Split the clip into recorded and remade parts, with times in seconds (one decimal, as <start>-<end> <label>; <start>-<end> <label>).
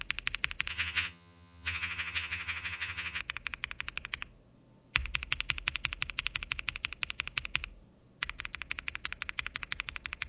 0.0-0.7 recorded; 0.7-3.2 remade; 3.2-10.3 recorded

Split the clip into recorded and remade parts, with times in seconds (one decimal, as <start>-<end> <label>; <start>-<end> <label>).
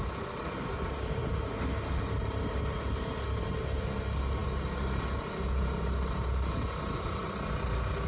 0.0-8.1 recorded